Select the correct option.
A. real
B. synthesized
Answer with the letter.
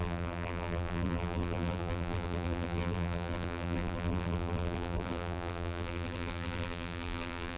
B